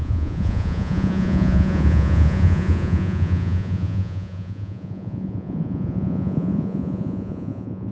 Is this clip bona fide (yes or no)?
no